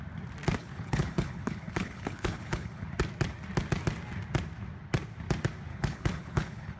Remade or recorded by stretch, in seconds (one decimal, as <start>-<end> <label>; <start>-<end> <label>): 0.0-0.6 recorded; 0.6-2.9 remade; 2.9-5.7 recorded; 5.7-6.8 remade